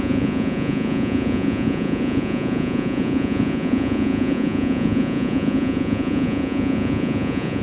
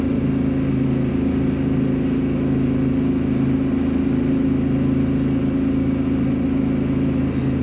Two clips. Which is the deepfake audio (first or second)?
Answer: first